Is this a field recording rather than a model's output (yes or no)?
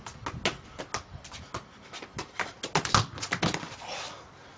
yes